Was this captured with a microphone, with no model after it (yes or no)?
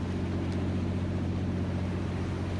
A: yes